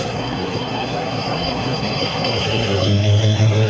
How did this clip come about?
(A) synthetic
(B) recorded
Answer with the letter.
A